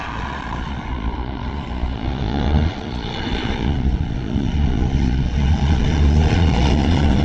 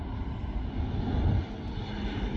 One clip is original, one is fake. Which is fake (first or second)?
first